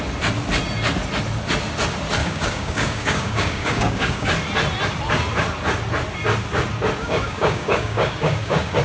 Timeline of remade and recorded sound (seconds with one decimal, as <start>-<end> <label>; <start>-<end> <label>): 0.0-2.2 recorded; 2.2-4.3 remade; 4.3-7.0 recorded; 7.0-8.8 remade